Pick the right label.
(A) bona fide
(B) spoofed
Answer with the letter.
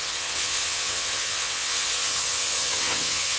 B